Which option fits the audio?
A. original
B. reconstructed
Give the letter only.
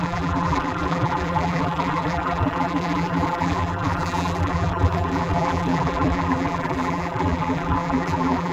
B